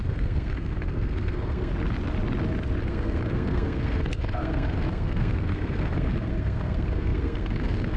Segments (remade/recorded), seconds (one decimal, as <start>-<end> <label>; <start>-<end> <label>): 0.0-1.7 remade; 1.7-2.8 recorded; 2.8-8.0 remade